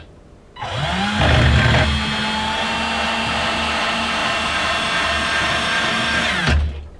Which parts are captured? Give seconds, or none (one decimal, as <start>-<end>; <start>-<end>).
0.0-7.0